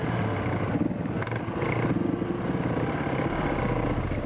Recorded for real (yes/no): no